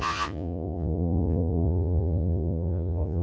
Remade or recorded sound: remade